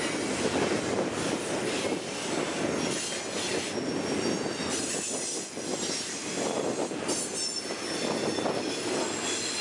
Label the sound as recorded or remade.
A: recorded